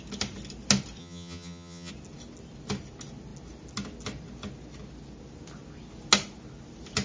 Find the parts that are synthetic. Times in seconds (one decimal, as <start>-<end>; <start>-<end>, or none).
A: 1.0-1.9